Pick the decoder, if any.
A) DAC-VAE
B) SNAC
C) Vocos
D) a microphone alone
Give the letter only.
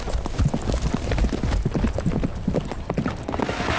D